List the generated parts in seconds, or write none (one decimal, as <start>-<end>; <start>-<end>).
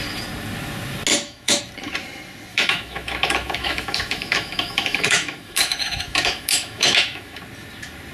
1.1-1.6; 2.5-7.4